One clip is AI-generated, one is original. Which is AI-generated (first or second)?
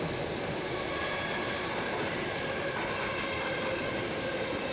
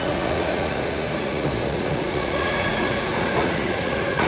second